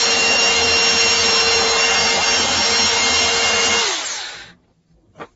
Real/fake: real